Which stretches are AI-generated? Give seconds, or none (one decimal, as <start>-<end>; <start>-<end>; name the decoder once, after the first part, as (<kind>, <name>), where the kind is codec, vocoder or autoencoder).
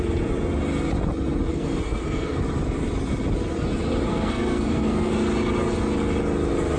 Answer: 1.5-2.4 (codec, SNAC); 4.1-5.1